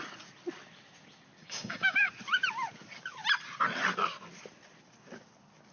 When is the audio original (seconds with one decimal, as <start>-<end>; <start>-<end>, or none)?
0.0-1.4; 2.1-5.7